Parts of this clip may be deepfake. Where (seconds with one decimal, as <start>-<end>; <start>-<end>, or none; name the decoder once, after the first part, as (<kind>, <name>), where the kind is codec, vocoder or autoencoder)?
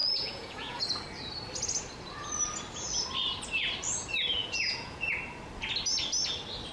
0.0-0.8 (vocoder, Vocos); 4.4-5.1